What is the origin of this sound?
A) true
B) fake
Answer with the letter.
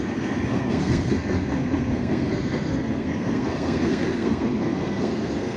B